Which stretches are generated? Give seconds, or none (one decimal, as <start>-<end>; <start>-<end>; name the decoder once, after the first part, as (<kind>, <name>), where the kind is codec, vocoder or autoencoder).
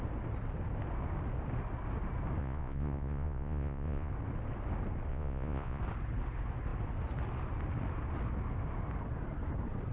2.4-4.1 (vocoder, Vocos); 5.1-5.8